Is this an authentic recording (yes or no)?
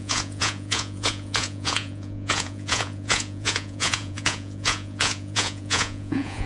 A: no